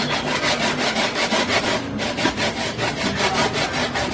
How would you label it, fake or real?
real